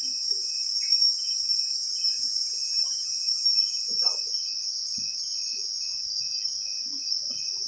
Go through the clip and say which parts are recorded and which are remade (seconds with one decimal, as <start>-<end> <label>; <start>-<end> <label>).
0.0-7.7 recorded